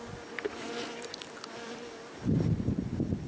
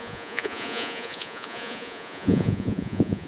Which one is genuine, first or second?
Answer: first